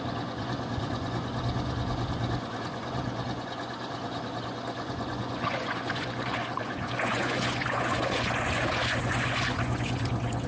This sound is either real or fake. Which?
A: fake